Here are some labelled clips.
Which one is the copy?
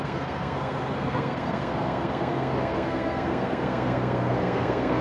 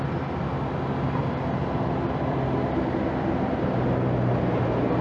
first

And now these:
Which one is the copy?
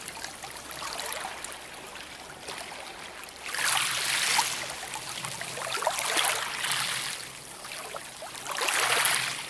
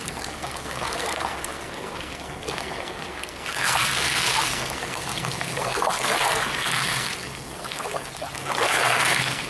second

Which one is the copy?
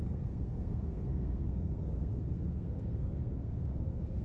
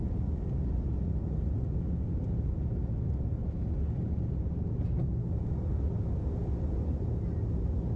first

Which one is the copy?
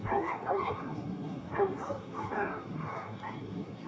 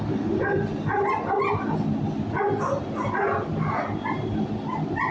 first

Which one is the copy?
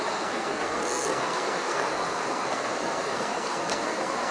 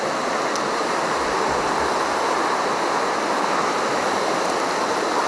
first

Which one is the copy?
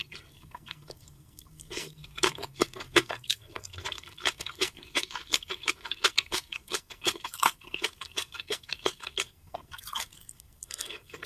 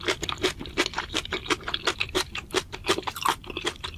first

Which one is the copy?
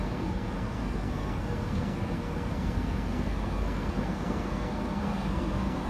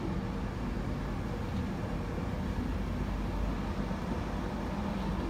first